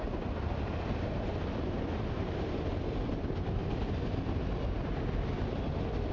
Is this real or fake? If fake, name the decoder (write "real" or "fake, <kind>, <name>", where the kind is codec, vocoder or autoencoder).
real